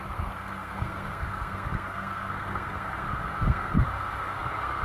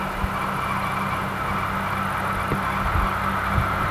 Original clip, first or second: second